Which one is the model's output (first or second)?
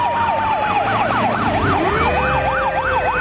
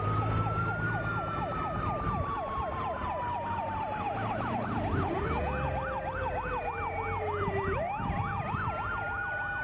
second